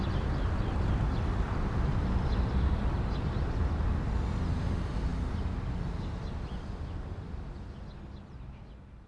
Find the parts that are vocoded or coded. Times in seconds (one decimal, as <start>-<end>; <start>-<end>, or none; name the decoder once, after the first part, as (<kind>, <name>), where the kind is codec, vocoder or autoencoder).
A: none